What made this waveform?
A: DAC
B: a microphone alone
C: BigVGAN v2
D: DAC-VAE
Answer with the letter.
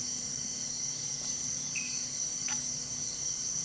A